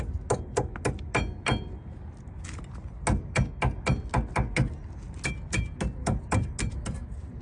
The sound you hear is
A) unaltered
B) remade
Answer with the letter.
A